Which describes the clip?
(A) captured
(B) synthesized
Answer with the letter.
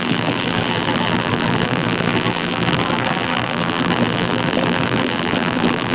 B